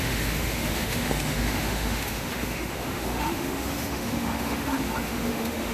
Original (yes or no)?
no